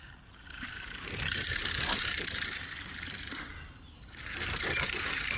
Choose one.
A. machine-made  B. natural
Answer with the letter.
A